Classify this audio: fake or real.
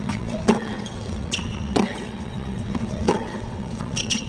fake